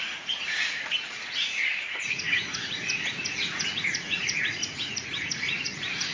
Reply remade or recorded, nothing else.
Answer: remade